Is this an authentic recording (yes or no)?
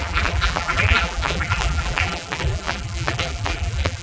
no